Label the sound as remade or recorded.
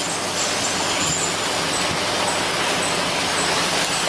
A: recorded